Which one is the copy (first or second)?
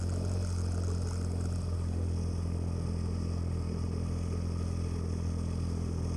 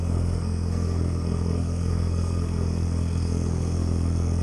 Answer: second